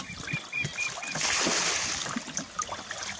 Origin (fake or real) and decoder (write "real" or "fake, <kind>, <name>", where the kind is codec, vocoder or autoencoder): real